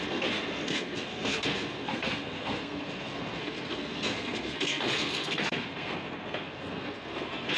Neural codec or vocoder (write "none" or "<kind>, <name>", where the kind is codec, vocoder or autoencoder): codec, SNAC